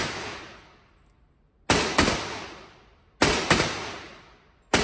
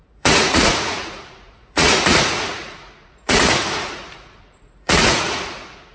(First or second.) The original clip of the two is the first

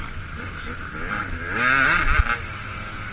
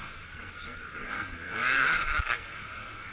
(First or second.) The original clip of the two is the first